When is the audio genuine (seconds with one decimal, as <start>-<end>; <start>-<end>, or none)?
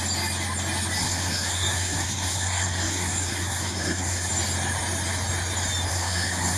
0.0-1.0; 4.3-5.9